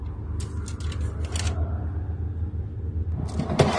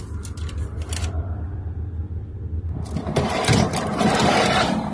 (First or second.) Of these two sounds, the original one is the first